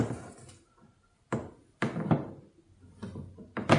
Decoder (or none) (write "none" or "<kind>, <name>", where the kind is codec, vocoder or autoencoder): none